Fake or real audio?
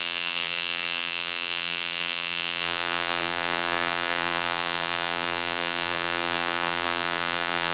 fake